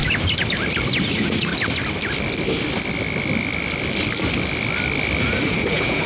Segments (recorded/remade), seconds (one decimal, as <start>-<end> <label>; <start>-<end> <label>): 0.0-1.1 recorded; 1.1-1.5 remade; 1.5-5.2 recorded; 5.2-6.1 remade